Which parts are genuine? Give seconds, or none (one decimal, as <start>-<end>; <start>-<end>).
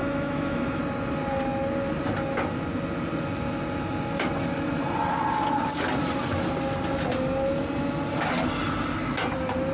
0.8-9.7